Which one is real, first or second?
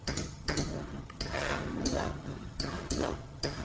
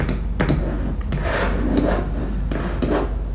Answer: second